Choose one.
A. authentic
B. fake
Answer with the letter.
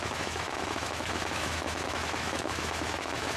B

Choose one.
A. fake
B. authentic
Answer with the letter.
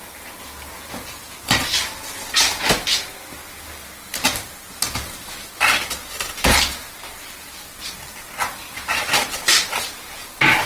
B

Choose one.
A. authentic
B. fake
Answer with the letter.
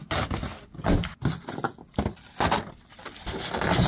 A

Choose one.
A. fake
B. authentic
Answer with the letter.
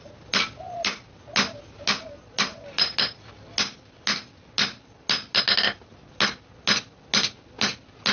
B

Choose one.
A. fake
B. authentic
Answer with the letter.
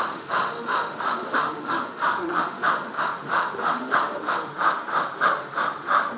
A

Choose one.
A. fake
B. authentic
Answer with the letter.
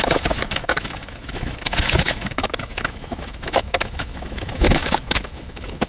A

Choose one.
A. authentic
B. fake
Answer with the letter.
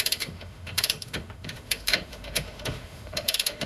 B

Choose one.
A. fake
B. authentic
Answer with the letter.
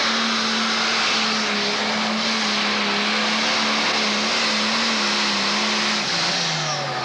B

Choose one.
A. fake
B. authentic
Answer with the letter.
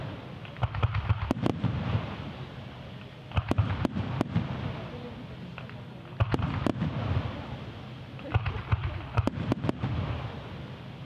B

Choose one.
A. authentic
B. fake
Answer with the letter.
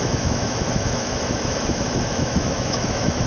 B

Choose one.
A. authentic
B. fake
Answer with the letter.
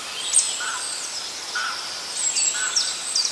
A